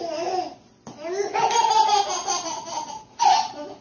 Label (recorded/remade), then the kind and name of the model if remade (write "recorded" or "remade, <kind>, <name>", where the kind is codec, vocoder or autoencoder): recorded